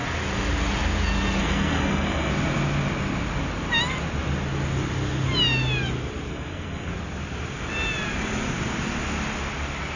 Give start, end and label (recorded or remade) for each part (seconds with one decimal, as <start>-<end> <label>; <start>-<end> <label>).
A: 0.0-1.4 recorded; 1.4-2.3 remade; 2.3-6.3 recorded; 6.3-6.9 remade; 6.9-10.0 recorded